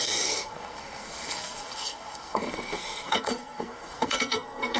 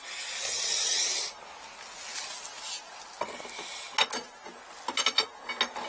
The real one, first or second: second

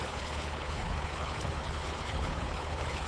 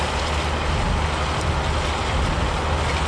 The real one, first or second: second